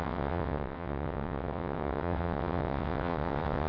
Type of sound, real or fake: fake